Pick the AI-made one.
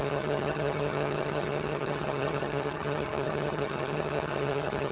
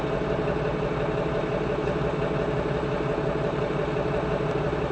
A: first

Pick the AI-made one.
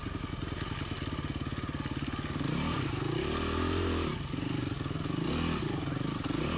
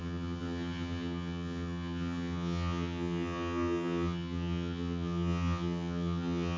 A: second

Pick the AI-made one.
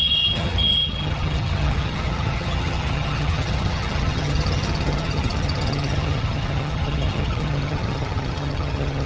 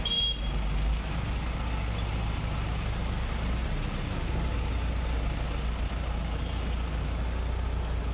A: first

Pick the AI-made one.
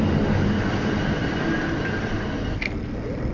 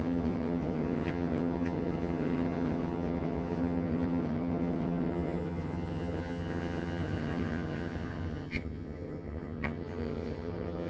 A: second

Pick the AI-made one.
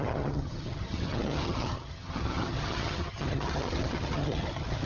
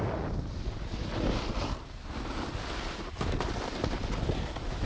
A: first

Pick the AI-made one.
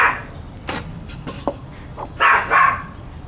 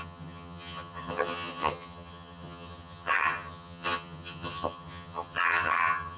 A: second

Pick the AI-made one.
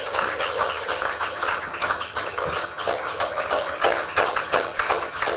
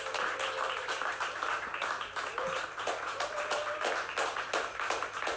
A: first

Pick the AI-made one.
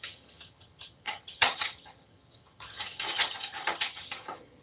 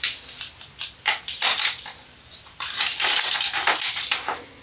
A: first